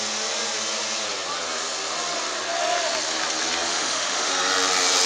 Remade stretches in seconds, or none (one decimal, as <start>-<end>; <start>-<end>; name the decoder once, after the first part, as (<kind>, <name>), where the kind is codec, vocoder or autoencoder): 3.7-4.3 (autoencoder, DAC-VAE)